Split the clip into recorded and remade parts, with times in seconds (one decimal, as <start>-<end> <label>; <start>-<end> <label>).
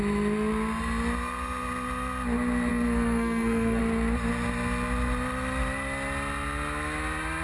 0.0-2.7 recorded; 2.7-3.8 remade; 3.8-7.4 recorded